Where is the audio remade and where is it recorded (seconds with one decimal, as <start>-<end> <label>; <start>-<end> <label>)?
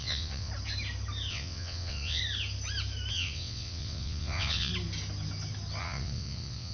0.0-0.5 remade; 0.5-1.3 recorded; 1.3-2.2 remade; 2.2-3.1 recorded; 3.1-4.7 remade; 4.7-5.8 recorded; 5.8-6.7 remade